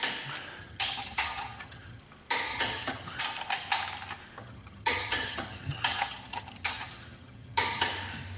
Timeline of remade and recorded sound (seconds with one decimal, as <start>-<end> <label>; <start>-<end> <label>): 0.0-0.6 recorded; 0.6-2.0 remade; 2.0-2.5 recorded; 2.5-3.2 remade; 3.2-4.4 recorded; 4.4-7.9 remade; 7.9-8.4 recorded